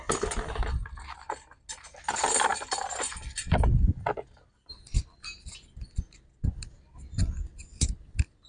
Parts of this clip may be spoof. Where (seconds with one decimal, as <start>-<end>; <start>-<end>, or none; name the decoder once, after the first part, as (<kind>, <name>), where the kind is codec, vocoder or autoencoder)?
none